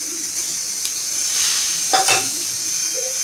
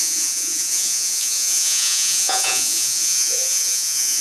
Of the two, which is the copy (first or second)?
second